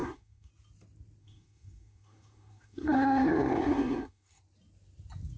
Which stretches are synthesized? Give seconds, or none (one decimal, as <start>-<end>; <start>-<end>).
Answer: 0.0-0.5; 1.2-4.4